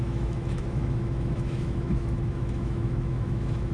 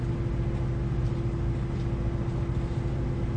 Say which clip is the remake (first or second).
first